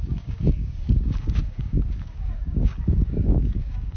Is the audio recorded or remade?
remade